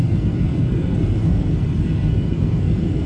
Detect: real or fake fake